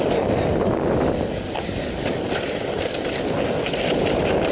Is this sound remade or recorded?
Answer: recorded